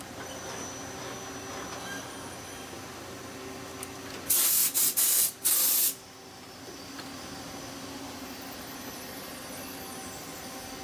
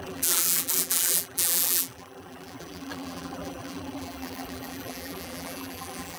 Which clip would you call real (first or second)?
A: first